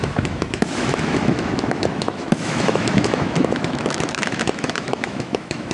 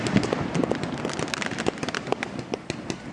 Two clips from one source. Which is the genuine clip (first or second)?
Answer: second